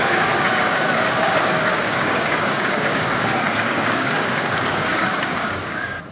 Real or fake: fake